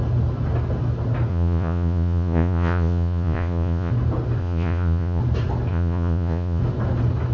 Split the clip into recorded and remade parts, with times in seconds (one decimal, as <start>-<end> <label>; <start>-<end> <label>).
0.0-1.3 recorded; 1.3-3.9 remade; 3.9-4.4 recorded; 4.4-5.2 remade; 5.2-5.7 recorded; 5.7-6.6 remade; 6.6-7.3 recorded